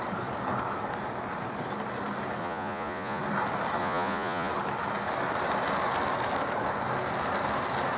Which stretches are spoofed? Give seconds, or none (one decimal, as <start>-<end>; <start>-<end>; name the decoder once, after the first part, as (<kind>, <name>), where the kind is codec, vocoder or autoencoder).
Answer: 2.4-3.2 (vocoder, Vocos); 3.8-4.5